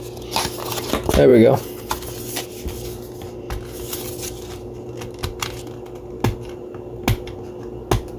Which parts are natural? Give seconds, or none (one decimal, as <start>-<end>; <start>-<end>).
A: 0.0-8.2